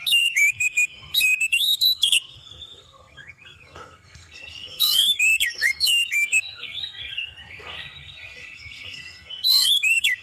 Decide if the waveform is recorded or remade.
remade